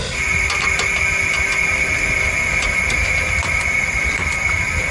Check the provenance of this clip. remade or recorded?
recorded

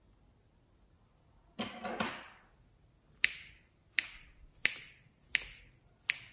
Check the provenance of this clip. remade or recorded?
recorded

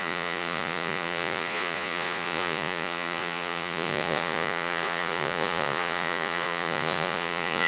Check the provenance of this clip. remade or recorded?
remade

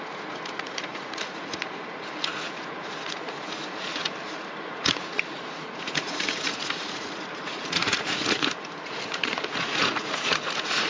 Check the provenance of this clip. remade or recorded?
remade